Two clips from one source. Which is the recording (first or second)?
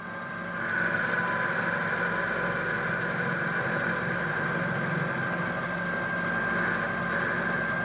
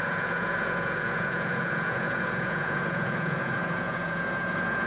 first